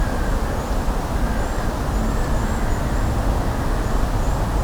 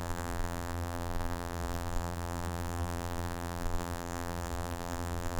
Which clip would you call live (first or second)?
first